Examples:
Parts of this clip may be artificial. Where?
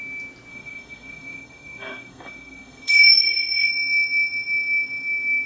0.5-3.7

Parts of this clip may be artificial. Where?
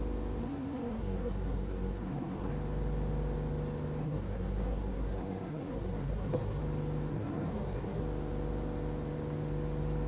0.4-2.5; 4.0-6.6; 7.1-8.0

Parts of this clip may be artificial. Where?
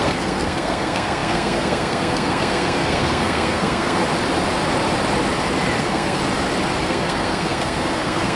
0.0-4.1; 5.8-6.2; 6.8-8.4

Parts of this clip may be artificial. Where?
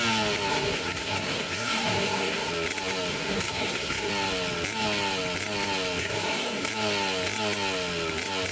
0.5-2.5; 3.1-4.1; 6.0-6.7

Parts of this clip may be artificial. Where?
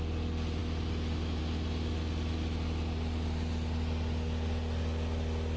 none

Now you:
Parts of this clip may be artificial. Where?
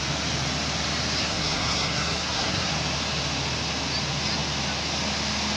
1.2-2.7